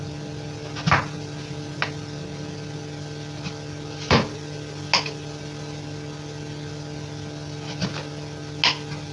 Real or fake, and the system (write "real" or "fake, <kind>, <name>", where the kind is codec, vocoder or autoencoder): real